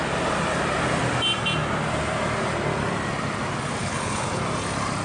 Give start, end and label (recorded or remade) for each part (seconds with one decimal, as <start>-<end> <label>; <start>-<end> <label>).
0.0-3.8 recorded; 3.8-4.4 remade; 4.4-5.0 recorded